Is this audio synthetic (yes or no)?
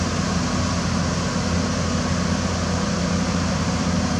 no